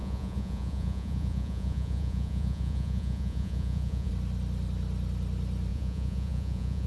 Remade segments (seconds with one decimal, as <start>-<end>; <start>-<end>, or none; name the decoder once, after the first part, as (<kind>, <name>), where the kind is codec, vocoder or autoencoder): 0.0-4.1 (vocoder, Vocos); 5.7-6.9

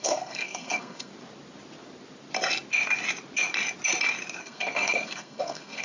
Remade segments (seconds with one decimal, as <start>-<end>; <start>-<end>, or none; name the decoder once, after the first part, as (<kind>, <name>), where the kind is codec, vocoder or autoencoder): 0.0-1.1 (codec, SNAC); 4.4-5.8

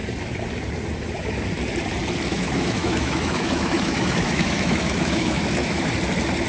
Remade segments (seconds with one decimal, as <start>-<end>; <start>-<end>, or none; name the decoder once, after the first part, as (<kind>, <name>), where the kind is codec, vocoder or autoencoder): 2.3-5.9 (autoencoder, DAC-VAE)

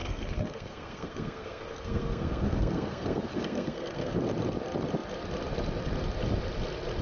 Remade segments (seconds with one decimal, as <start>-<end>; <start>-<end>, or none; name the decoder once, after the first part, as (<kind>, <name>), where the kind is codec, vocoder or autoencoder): 0.0-4.2 (codec, SNAC)

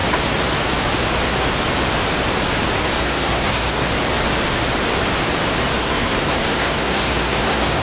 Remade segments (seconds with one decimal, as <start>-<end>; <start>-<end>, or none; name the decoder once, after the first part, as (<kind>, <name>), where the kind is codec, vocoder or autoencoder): 3.0-3.9 (codec, SNAC); 5.8-7.8